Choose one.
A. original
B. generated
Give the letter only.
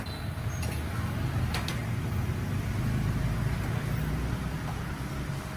A